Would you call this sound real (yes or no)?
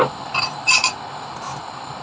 yes